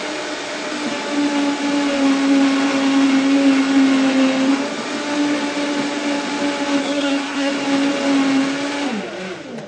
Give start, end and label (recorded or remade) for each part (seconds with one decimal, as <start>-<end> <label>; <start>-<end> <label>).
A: 0.0-6.8 recorded; 6.8-7.5 remade; 7.5-9.7 recorded